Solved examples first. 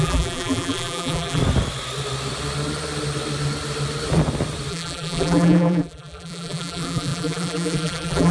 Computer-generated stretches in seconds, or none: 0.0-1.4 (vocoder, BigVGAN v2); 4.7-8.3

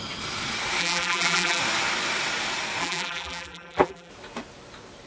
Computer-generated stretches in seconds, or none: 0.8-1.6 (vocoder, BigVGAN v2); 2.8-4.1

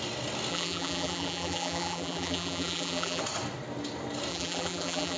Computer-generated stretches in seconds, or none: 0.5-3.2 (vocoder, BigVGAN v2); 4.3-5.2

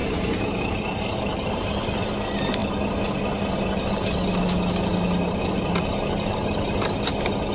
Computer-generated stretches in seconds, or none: 0.0-2.1 (vocoder, BigVGAN v2)

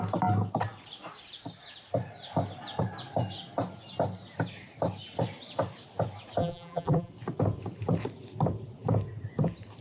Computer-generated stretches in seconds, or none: 6.4-7.1 (vocoder, BigVGAN v2)

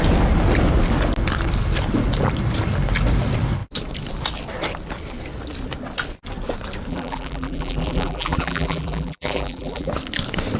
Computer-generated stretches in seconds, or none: 6.9-9.9 (vocoder, BigVGAN v2)

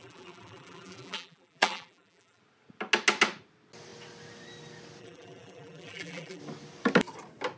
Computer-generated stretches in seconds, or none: 0.0-2.4 (vocoder, BigVGAN v2); 5.0-6.4